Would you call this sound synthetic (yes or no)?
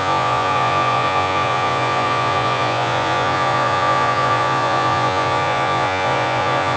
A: yes